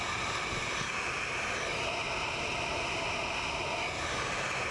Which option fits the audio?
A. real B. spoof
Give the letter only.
A